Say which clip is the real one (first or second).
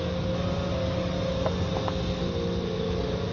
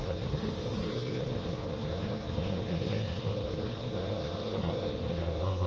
first